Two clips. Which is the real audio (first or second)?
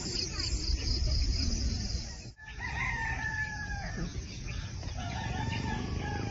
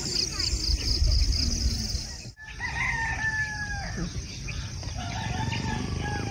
second